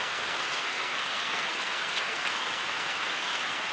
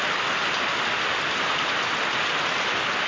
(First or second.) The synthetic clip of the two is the first